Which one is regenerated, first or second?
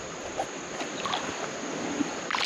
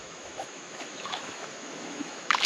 second